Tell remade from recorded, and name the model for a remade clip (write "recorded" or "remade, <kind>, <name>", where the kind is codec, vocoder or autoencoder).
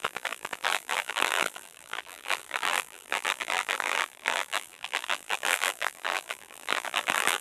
remade, vocoder, BigVGAN v2